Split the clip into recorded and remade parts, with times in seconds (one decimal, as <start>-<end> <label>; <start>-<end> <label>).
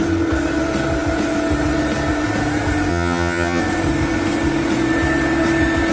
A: 0.0-2.9 recorded; 2.9-3.6 remade; 3.6-5.9 recorded